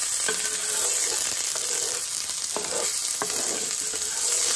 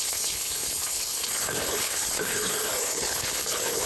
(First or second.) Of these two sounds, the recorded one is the first